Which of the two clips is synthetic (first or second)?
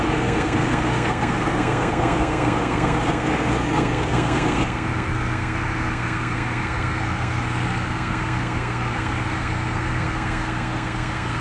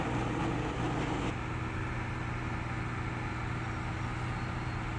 first